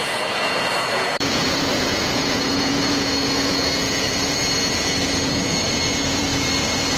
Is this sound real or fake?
fake